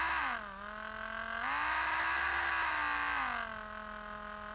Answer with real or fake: real